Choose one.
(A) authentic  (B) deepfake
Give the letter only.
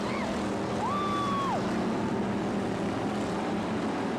A